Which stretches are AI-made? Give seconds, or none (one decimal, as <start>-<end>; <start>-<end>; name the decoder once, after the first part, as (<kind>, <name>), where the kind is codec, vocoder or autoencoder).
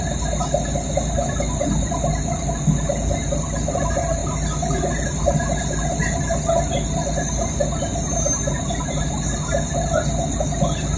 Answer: none